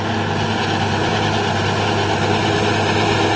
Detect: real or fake real